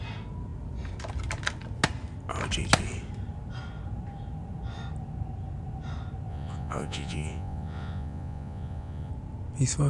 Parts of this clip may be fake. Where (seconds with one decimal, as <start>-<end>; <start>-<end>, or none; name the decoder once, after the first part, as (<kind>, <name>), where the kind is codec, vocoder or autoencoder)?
6.3-9.1 (vocoder, Vocos)